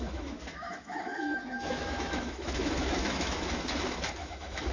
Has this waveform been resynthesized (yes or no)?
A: yes